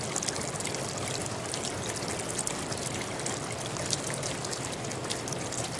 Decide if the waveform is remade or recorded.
recorded